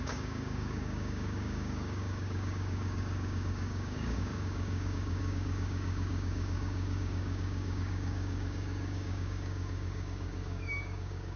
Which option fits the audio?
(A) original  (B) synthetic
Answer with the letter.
B